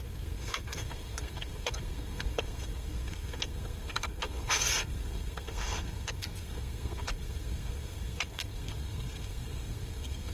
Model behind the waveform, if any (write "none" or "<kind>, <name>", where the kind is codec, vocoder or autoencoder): codec, SNAC